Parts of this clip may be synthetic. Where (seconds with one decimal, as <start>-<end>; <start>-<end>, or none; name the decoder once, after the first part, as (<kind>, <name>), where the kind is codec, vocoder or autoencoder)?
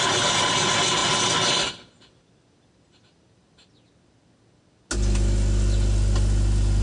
none